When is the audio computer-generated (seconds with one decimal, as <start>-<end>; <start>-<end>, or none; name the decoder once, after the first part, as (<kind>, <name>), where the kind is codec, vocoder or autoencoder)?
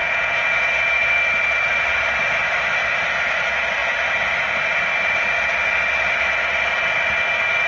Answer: 0.0-1.1 (vocoder, Vocos)